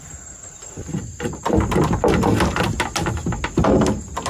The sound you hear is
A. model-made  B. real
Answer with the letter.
B